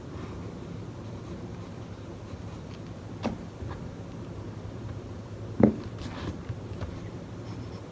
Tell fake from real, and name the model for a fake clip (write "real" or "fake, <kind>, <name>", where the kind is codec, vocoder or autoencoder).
fake, vocoder, BigVGAN v2